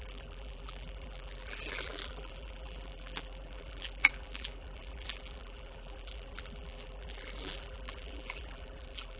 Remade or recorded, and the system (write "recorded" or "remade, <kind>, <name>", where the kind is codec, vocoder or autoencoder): remade, vocoder, BigVGAN v2